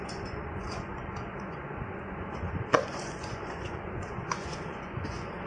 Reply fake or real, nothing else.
fake